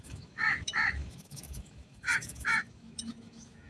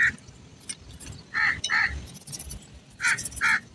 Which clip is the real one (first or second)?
second